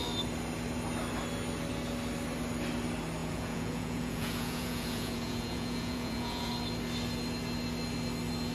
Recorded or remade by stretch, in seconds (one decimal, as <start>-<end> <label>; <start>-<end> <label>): 0.0-3.2 recorded; 3.2-6.5 remade; 6.5-8.5 recorded